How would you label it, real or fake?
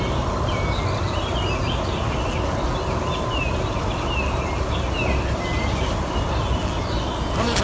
real